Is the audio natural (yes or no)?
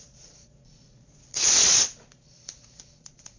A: no